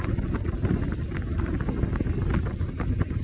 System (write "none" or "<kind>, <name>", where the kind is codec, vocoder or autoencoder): none